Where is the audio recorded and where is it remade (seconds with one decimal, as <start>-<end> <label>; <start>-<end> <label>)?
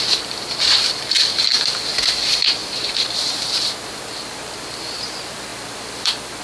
0.0-1.5 recorded; 1.5-2.2 remade; 2.2-2.6 recorded; 2.6-5.0 remade; 5.0-5.5 recorded; 5.5-6.4 remade